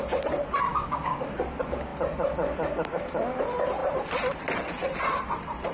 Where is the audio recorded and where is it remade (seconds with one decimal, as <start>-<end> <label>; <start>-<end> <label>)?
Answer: 0.0-0.7 recorded; 0.7-1.3 remade; 1.3-5.7 recorded